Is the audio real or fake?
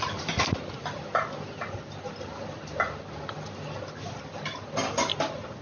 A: real